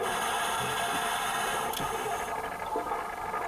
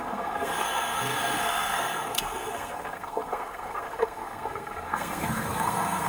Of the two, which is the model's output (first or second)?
second